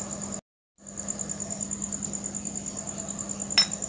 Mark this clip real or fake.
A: real